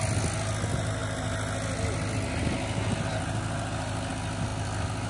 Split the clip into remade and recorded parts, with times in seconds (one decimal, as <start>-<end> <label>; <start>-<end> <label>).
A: 0.0-5.1 recorded